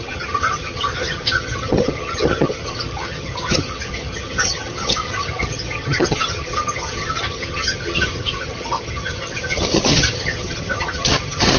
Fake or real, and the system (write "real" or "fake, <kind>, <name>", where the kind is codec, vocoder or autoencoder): fake, vocoder, HiFi-GAN